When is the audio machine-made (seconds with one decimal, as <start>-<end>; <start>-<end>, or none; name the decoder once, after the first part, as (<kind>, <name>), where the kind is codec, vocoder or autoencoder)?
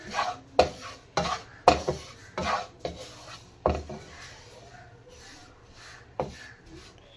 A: none